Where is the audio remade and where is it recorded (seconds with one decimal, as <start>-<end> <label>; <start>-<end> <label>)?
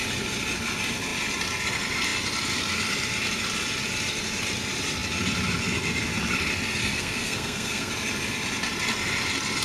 0.0-6.8 recorded; 6.8-7.9 remade; 7.9-9.6 recorded